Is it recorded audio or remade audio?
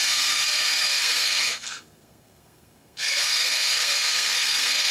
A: remade